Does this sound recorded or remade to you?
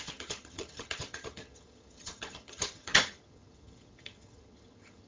remade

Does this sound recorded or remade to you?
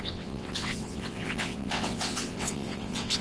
remade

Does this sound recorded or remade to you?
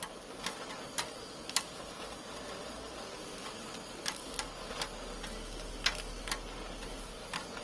recorded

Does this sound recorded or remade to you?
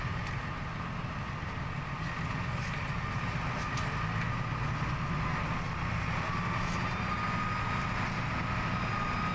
recorded